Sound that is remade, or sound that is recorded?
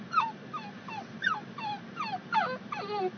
recorded